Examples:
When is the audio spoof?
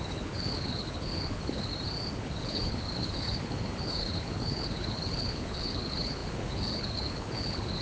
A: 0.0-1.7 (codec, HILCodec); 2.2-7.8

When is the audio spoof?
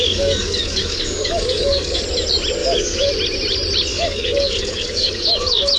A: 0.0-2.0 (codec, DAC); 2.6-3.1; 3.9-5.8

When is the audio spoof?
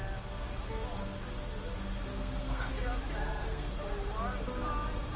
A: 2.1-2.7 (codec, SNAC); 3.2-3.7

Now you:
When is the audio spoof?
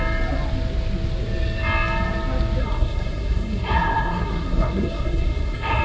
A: 2.6-5.8 (codec, SNAC)